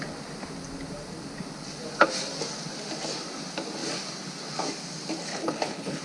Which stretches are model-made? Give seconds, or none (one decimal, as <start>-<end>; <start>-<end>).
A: 5.3-6.0